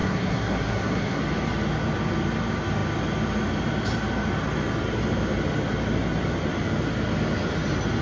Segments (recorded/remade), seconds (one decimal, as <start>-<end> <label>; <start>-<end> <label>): 0.0-1.2 remade; 1.2-8.0 recorded